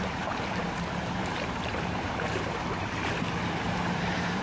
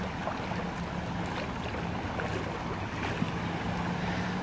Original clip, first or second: second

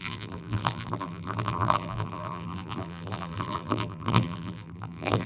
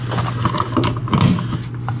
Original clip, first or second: second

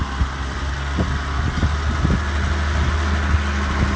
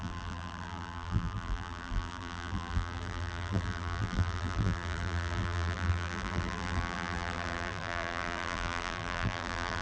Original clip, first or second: first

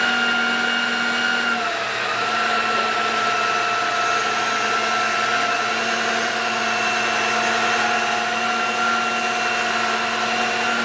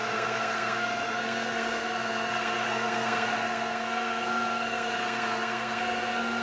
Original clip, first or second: first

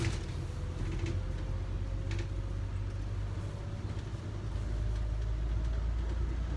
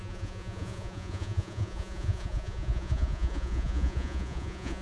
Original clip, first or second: first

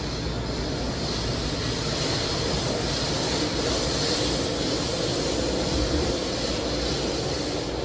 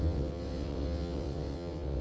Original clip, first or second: first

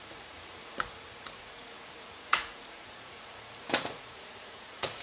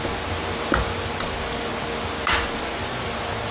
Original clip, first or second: second